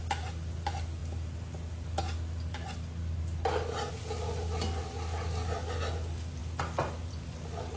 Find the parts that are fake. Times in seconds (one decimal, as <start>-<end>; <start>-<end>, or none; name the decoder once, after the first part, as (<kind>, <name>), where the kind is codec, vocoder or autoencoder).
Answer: none